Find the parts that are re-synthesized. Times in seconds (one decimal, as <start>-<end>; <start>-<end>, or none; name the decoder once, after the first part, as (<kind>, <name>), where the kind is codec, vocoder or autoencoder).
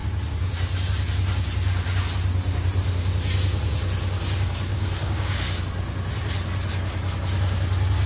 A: 4.7-5.6 (codec, DAC)